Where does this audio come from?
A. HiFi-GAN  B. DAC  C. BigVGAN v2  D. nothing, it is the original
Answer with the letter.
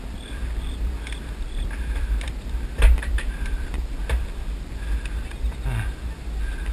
D